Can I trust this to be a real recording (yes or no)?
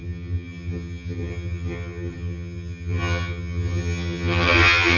no